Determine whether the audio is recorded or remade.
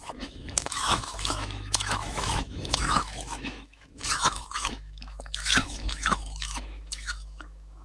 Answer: remade